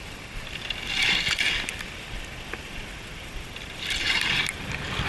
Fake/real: real